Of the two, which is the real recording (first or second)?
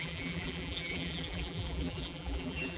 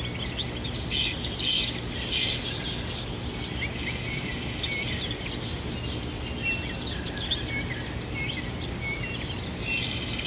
second